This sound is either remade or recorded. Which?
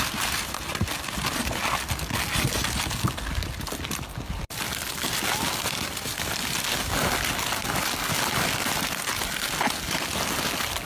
recorded